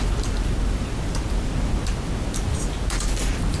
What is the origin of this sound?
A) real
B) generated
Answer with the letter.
A